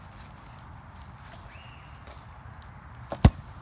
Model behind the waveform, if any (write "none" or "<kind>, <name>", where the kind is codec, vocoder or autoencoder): none